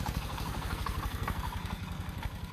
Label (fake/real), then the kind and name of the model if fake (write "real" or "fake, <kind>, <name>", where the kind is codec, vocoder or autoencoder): fake, codec, SNAC